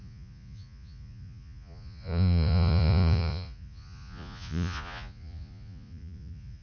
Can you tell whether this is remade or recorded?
remade